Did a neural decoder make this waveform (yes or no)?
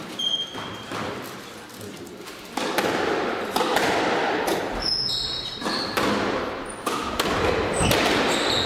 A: no